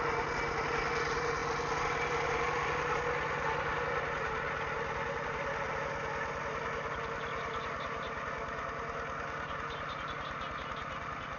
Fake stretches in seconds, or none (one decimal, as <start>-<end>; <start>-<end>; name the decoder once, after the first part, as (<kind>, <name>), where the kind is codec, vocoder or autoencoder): none